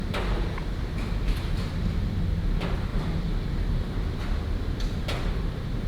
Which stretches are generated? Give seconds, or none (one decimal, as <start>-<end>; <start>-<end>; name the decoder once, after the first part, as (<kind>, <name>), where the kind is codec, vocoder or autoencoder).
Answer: none